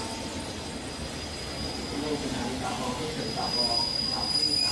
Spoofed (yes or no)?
no